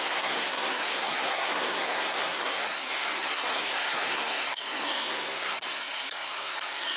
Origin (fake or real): fake